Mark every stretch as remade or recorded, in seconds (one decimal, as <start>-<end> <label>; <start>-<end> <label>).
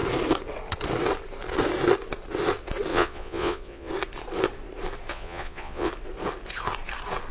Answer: 0.0-2.9 recorded; 2.9-3.9 remade; 3.9-5.1 recorded; 5.1-5.9 remade; 5.9-7.3 recorded